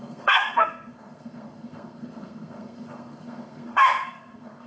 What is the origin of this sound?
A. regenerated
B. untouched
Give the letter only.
A